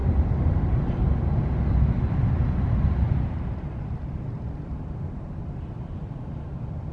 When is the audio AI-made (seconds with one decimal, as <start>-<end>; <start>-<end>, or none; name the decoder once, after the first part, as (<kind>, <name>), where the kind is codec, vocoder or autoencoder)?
none